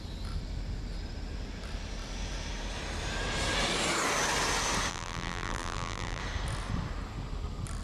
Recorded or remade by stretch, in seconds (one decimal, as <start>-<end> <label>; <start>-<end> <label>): 0.0-4.9 recorded; 4.9-6.2 remade; 6.2-7.8 recorded